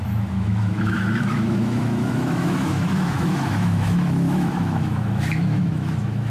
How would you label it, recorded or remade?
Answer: remade